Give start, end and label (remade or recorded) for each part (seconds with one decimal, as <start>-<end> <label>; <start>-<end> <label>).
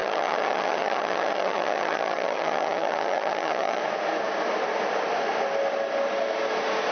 0.0-3.8 remade; 3.8-6.9 recorded